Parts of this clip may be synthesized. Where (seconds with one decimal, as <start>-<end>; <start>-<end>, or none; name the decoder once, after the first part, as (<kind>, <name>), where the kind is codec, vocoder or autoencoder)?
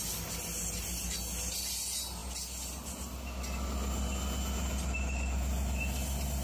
none